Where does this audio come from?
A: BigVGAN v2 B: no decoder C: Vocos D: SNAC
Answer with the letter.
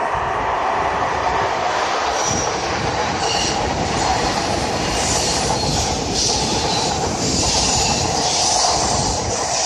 A